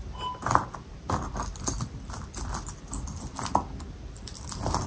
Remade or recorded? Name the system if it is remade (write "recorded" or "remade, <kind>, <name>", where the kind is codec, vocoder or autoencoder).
recorded